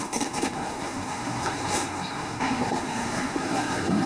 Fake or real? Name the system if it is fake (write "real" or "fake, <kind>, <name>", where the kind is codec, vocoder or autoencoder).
fake, codec, SNAC